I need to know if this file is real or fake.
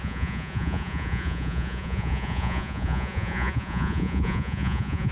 fake